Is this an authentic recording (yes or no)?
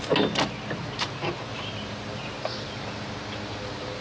yes